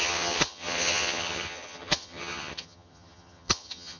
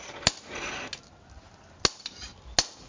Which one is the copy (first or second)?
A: first